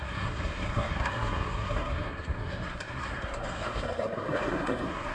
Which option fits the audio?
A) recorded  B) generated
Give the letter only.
B